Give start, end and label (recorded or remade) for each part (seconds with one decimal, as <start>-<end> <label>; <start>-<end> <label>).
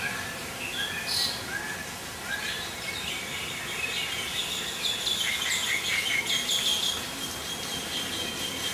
0.0-8.7 recorded